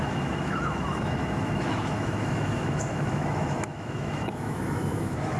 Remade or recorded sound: remade